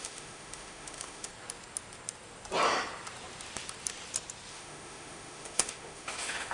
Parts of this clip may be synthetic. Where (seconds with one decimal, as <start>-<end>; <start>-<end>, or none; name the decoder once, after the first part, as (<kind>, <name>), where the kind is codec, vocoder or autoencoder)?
0.0-1.3 (autoencoder, DAC-VAE); 4.5-6.5